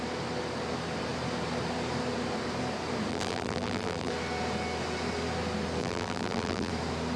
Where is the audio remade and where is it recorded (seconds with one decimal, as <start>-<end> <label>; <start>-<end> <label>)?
0.0-3.1 recorded; 3.1-4.1 remade; 4.1-5.8 recorded; 5.8-6.7 remade; 6.7-7.2 recorded